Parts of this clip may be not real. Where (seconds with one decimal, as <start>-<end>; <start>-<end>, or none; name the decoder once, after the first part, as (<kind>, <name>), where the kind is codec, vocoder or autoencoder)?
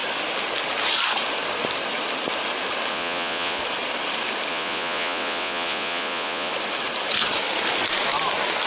2.9-3.6 (vocoder, Vocos); 4.5-6.5